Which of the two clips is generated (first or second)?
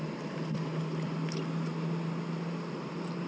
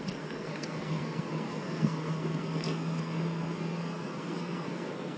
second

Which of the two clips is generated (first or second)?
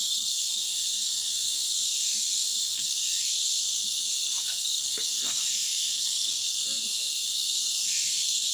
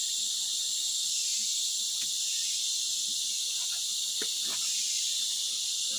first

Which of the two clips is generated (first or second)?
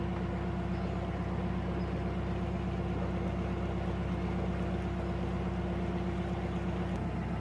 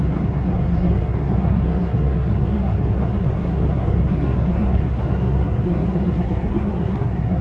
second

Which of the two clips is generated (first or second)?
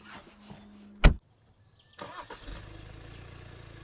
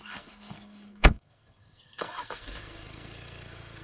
second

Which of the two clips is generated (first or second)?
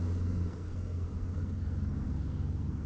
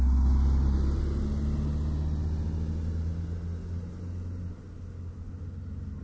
first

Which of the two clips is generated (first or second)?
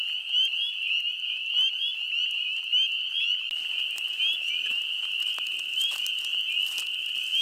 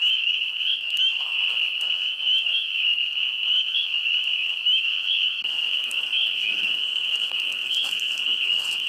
second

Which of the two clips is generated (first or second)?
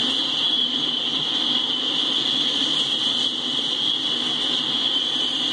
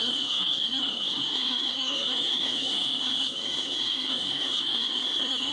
second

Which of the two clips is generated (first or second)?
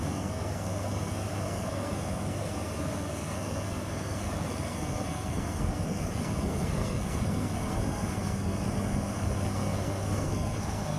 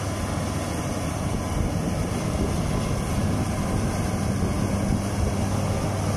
first